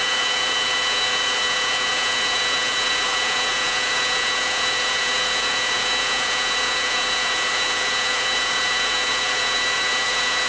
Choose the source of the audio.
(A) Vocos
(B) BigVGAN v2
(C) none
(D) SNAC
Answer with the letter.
A